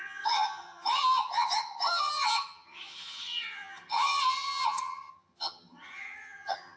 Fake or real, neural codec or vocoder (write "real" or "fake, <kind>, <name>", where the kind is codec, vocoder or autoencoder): fake, vocoder, HiFi-GAN